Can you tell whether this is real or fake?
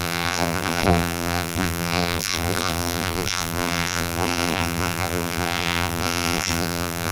fake